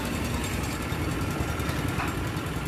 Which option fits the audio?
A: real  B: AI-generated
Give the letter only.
A